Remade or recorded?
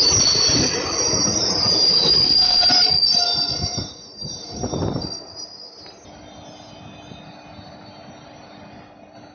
recorded